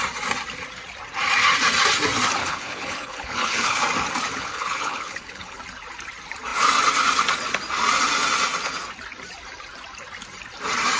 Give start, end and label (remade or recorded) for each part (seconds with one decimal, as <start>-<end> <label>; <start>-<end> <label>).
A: 0.0-2.4 recorded; 2.4-3.8 remade; 3.8-4.3 recorded; 4.3-5.6 remade; 5.6-11.0 recorded